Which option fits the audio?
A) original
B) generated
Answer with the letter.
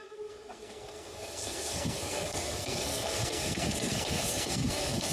B